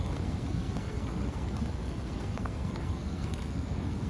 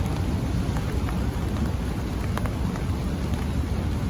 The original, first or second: second